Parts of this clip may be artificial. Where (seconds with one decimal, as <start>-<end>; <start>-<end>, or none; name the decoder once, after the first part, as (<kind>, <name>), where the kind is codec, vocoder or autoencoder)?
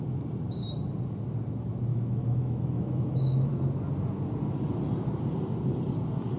1.9-3.5 (autoencoder, DAC-VAE)